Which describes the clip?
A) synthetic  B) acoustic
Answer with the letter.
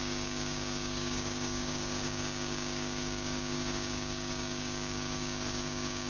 A